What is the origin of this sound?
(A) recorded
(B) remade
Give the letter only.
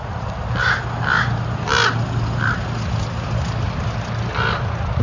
A